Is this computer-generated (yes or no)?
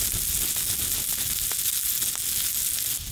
no